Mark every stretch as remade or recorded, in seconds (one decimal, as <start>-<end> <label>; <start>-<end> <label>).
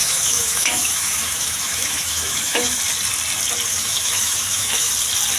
0.0-2.8 remade; 2.8-3.7 recorded; 3.7-4.9 remade; 4.9-5.4 recorded